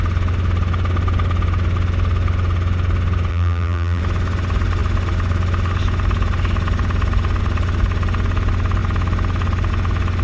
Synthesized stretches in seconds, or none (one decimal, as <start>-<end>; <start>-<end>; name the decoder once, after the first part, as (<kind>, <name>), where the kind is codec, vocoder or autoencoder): 3.3-4.0 (vocoder, BigVGAN v2)